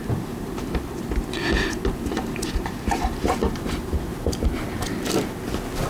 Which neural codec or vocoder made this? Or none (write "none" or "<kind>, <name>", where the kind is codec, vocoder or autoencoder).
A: vocoder, BigVGAN v2